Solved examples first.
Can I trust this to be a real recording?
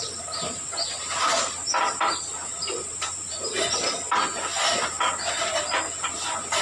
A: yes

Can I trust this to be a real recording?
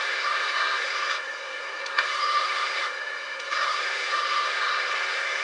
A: no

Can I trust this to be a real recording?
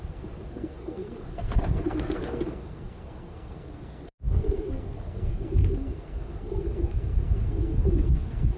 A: no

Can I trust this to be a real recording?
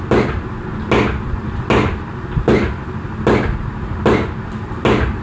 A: yes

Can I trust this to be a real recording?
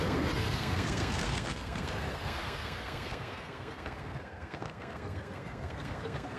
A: no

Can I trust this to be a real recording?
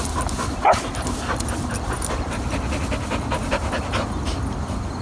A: yes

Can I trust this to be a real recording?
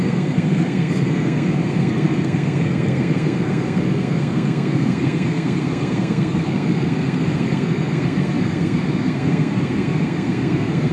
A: no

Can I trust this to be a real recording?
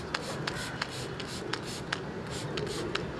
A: yes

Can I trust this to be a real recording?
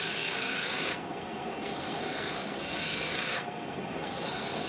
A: no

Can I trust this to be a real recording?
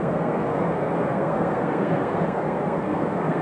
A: no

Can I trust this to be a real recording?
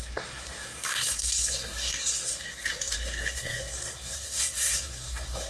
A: no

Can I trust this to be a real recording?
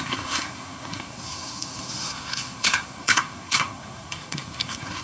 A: no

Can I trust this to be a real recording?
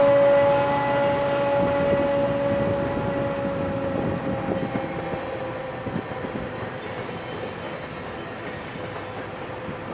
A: yes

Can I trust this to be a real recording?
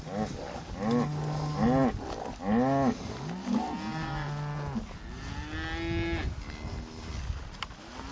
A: yes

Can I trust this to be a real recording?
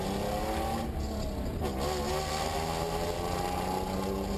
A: yes